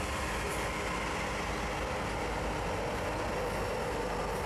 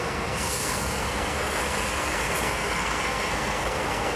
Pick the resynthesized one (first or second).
second